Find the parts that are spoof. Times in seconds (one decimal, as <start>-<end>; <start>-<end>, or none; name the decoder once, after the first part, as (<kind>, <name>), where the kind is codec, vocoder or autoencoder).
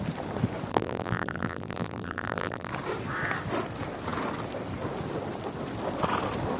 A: 0.7-2.7 (vocoder, BigVGAN v2)